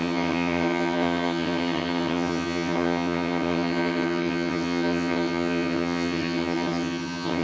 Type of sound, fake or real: fake